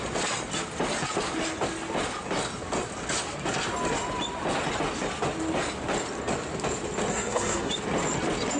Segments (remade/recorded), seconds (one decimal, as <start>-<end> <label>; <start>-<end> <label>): 0.0-7.1 recorded; 7.1-7.7 remade; 7.7-8.6 recorded